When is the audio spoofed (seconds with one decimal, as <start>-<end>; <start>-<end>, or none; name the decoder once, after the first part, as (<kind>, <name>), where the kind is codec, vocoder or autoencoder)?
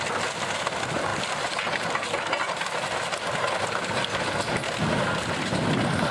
none